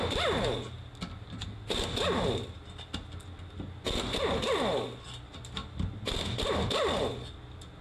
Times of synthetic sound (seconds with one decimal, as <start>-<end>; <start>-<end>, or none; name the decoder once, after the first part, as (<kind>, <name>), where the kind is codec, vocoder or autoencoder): none